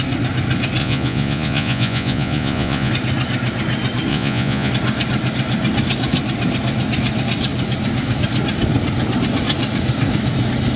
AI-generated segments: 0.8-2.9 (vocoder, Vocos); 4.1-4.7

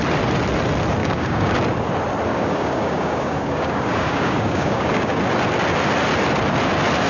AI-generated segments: 1.0-1.6 (codec, DAC); 2.3-5.2